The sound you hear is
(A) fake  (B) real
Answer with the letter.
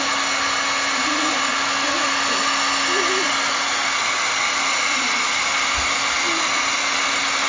B